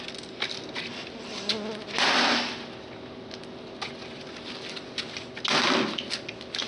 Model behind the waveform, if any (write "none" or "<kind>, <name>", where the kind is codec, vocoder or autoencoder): none